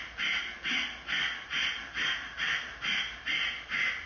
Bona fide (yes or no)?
yes